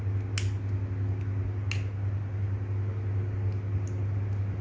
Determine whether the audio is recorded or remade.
recorded